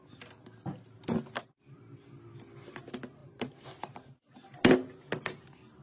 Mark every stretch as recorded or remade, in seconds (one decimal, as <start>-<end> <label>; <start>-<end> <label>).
0.0-5.8 recorded